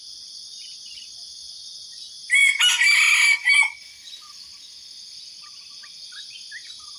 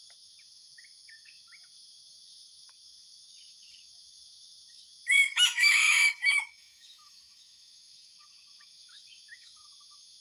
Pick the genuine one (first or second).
first